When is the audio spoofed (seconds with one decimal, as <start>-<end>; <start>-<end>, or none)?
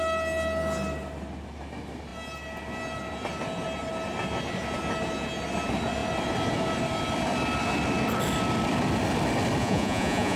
9.6-10.4